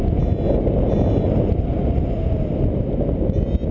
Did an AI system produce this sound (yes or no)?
no